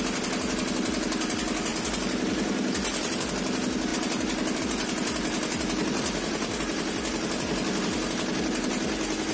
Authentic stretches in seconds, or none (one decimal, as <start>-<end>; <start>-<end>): 0.0-9.3